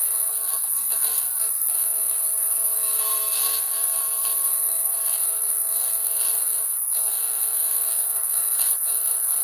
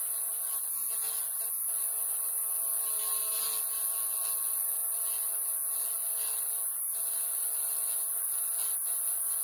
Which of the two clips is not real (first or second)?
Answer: first